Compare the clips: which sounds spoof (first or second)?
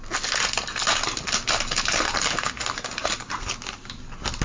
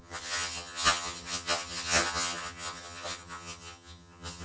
second